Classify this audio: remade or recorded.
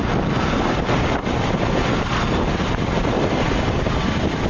recorded